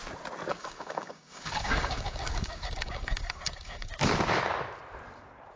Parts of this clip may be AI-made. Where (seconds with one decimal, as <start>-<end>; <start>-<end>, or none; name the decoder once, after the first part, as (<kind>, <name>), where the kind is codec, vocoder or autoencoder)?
0.5-3.9 (codec, DAC)